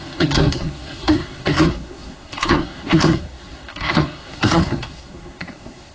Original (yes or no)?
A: no